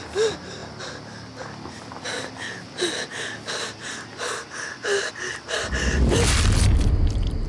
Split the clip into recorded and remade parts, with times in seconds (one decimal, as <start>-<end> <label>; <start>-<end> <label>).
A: 0.0-7.5 recorded